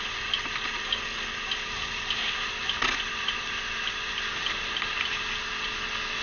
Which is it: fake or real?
real